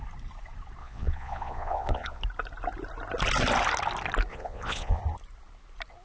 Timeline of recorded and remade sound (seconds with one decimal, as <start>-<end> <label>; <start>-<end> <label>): 0.0-0.8 recorded; 0.8-2.2 remade; 2.2-4.3 recorded; 4.3-5.0 remade; 5.0-6.0 recorded